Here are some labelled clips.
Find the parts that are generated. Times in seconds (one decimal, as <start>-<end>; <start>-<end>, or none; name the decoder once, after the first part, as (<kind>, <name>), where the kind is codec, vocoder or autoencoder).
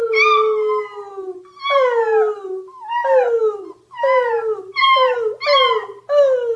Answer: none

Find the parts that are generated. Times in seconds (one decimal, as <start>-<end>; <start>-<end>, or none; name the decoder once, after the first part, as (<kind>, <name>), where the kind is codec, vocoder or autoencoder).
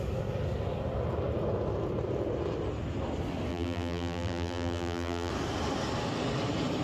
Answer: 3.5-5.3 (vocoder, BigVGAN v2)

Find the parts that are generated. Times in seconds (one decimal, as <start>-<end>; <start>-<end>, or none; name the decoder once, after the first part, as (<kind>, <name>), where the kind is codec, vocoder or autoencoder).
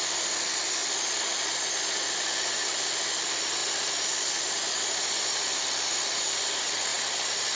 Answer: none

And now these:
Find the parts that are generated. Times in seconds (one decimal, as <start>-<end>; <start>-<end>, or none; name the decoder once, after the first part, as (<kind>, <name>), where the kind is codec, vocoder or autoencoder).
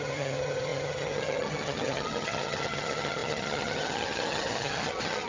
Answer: 0.0-5.3 (vocoder, HiFi-GAN)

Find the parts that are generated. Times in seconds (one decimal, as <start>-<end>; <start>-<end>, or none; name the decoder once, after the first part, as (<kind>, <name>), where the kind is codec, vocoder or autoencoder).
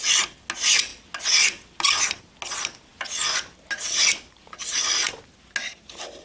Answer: none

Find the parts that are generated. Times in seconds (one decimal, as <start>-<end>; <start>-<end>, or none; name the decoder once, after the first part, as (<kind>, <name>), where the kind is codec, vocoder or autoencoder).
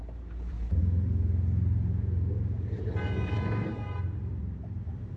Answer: 0.0-0.8 (vocoder, BigVGAN v2); 3.9-5.2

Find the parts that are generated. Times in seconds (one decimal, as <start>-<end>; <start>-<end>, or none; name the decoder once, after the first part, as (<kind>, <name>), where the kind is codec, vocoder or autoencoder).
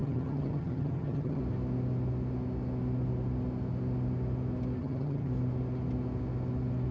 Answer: 0.0-1.4 (vocoder, HiFi-GAN); 4.8-5.3